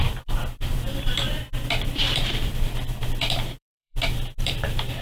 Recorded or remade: remade